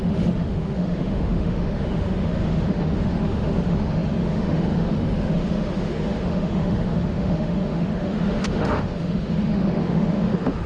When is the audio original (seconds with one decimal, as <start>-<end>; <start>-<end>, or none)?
none